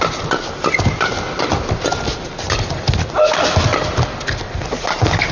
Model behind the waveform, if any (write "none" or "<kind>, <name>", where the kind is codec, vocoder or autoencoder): none